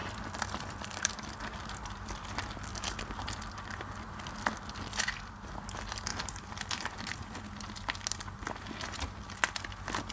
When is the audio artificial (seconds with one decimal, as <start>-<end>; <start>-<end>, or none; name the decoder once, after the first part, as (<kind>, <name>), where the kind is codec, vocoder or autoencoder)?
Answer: 0.0-0.7 (vocoder, BigVGAN v2); 6.1-7.4